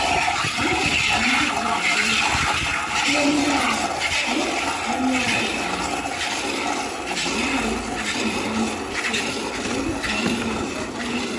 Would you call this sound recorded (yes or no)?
yes